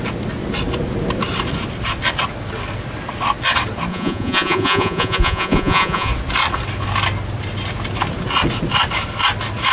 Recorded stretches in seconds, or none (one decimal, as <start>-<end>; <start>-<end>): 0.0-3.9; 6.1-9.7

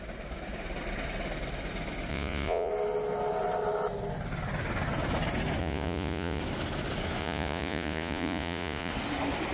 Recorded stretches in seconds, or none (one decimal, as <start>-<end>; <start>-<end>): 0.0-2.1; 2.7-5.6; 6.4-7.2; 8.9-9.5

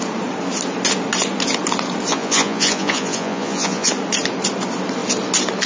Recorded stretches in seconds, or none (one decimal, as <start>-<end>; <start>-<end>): 0.0-2.1; 3.9-5.7

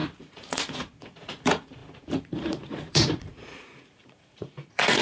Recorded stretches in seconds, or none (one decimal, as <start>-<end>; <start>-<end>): none

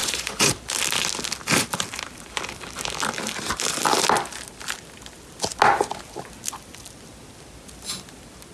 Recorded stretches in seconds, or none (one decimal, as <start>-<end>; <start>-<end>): 0.5-8.5

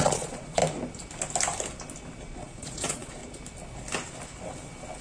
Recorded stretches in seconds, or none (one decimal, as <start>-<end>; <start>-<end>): 0.6-2.2; 3.2-5.0

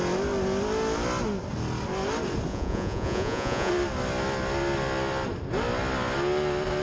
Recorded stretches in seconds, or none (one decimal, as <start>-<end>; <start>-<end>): 0.0-2.5; 3.7-6.8